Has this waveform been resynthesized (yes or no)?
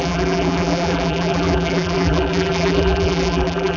yes